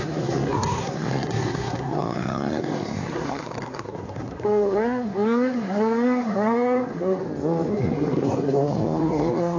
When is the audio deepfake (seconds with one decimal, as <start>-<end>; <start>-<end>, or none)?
0.0-7.2; 7.7-9.6